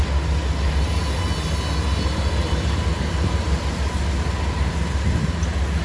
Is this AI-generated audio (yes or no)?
no